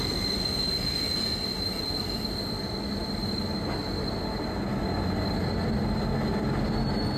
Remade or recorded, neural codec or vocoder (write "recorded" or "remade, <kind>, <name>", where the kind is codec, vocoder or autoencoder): recorded